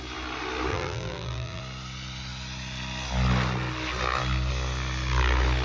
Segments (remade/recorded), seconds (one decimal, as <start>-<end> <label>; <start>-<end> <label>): 0.0-0.7 recorded; 0.7-1.6 remade; 1.6-5.6 recorded